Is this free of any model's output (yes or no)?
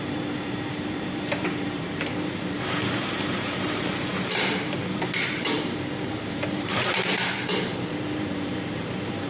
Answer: no